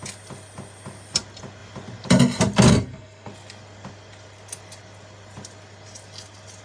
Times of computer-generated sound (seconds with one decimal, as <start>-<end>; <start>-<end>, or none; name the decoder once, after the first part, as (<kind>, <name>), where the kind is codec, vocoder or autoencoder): 2.7-3.3 (codec, SNAC)

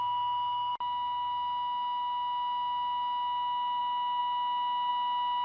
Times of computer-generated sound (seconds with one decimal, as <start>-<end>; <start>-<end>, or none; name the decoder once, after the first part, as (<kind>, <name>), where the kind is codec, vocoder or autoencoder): none

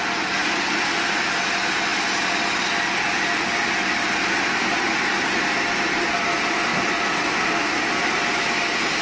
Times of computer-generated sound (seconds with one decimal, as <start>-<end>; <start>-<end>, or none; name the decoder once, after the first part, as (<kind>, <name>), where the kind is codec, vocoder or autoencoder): none

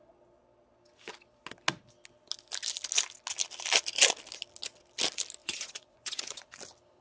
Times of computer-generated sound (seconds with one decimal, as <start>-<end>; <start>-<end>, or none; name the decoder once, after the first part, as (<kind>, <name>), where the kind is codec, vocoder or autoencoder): 5.4-6.6 (vocoder, Vocos)

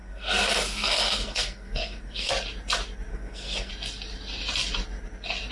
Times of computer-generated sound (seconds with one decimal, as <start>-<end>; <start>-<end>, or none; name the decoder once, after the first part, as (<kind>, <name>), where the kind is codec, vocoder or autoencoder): 0.0-2.3 (codec, SNAC); 3.1-3.7

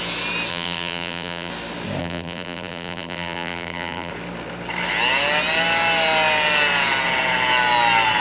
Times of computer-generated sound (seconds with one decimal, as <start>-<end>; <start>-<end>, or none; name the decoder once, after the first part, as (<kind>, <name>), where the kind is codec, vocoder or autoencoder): 0.5-1.5 (vocoder, BigVGAN v2); 2.0-4.1

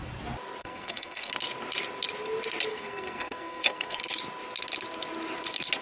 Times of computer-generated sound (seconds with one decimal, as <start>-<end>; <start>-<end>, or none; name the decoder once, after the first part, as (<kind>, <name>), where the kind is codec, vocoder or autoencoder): 0.6-1.3 (codec, SNAC); 2.7-4.0

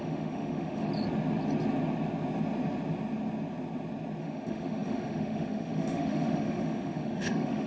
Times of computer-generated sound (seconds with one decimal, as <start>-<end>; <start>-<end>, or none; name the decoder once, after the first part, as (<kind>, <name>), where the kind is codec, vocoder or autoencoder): 0.0-0.9 (autoencoder, DAC-VAE); 4.2-7.7